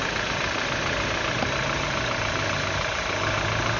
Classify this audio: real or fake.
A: real